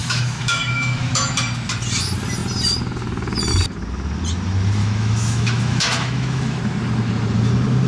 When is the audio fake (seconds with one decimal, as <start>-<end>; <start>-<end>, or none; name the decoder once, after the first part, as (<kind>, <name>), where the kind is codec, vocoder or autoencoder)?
0.0-1.3 (autoencoder, DAC-VAE); 4.8-6.6